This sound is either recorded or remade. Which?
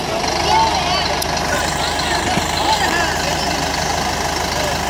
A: recorded